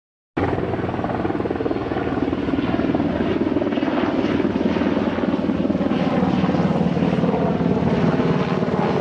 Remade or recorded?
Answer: recorded